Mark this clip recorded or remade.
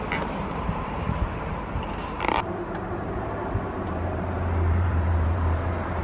remade